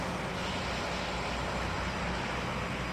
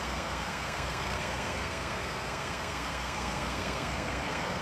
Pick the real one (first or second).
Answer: first